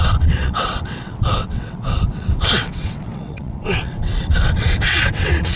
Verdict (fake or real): fake